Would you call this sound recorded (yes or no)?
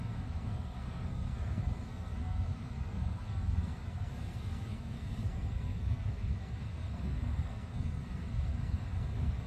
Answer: no